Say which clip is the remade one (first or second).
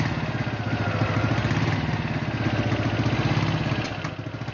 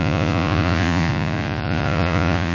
second